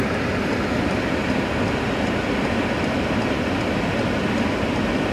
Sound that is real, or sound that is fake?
real